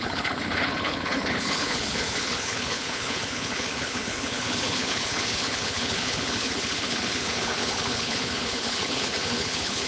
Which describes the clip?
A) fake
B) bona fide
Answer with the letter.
A